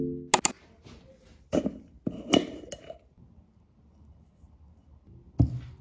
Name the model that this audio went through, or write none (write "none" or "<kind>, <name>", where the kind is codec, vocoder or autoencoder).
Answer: none